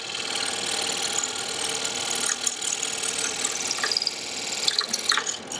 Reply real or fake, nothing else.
real